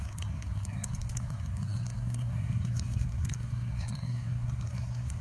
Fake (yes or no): yes